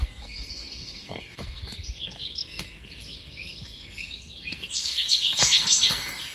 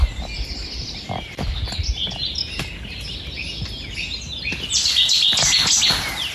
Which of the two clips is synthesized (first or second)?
first